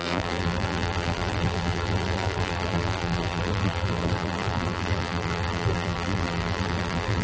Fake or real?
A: fake